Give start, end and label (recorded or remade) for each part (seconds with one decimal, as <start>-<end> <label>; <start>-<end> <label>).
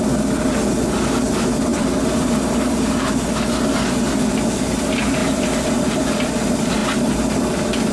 0.0-1.7 recorded; 1.7-3.1 remade; 3.1-5.2 recorded; 5.2-6.0 remade; 6.0-7.9 recorded